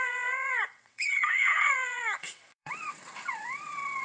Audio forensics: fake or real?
fake